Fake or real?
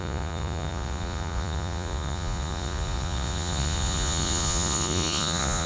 fake